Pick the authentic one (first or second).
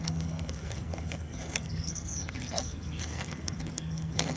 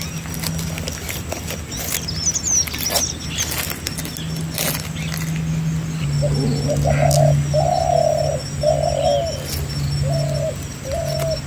second